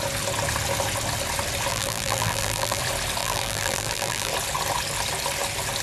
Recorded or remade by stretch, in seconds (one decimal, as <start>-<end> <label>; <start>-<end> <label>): 0.0-1.7 recorded; 1.7-2.8 remade; 2.8-3.2 recorded; 3.2-4.3 remade; 4.3-5.8 recorded